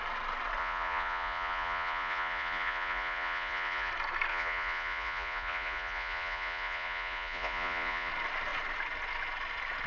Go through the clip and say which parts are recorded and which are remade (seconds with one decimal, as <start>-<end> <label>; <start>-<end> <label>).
0.0-0.6 recorded; 0.6-3.9 remade; 3.9-4.3 recorded; 4.3-8.1 remade; 8.1-9.9 recorded